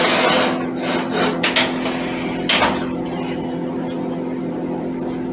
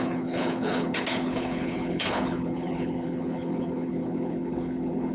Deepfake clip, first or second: second